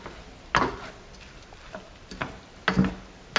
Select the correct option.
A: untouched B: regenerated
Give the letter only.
A